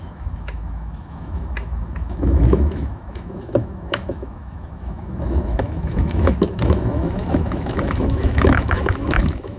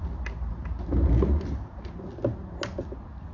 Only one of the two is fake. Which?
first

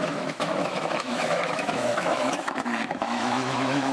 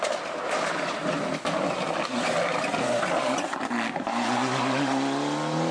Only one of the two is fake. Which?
first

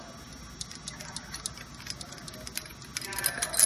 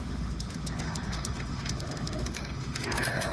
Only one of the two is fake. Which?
second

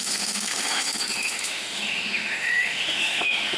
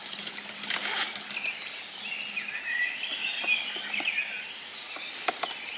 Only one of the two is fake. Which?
first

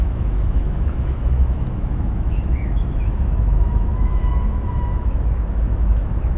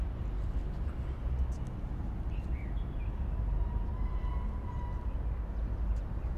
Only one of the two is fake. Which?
first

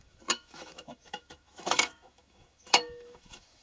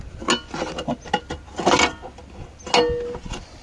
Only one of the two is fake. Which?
first